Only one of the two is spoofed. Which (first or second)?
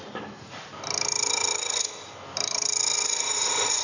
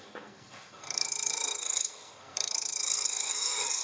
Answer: second